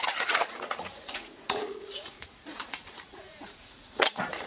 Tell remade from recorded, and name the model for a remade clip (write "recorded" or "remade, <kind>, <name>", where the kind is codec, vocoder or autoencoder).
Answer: remade, vocoder, Vocos